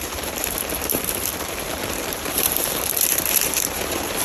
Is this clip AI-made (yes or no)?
yes